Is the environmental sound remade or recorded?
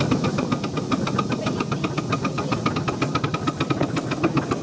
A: recorded